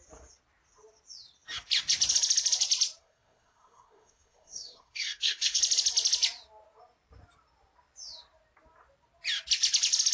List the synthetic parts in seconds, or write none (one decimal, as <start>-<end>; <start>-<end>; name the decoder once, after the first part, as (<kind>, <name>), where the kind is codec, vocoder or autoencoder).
3.0-5.6 (codec, SNAC)